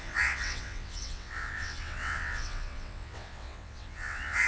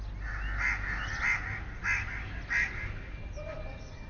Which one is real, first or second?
second